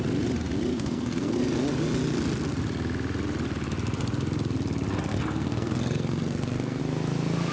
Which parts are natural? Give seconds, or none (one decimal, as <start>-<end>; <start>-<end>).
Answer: 0.0-0.7; 1.4-5.1; 6.8-7.5

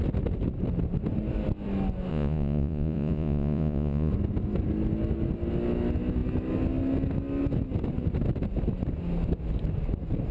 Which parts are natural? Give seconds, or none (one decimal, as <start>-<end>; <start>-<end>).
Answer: 0.0-2.1; 4.1-10.3

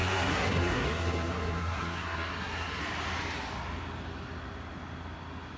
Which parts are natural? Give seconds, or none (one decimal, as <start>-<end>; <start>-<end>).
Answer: 2.8-5.6

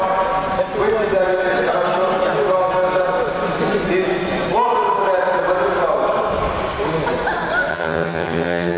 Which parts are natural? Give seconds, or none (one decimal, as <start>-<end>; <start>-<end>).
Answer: 0.0-7.7

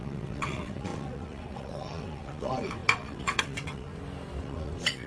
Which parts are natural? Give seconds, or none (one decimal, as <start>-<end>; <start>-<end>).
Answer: 3.9-4.4

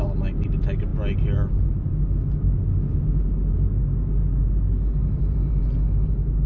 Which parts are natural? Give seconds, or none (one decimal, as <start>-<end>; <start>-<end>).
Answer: 0.0-5.0; 5.6-6.5